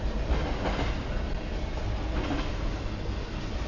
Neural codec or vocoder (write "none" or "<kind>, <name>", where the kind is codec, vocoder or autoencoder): none